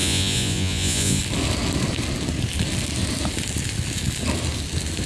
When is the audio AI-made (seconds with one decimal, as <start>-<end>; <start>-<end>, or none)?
0.0-1.2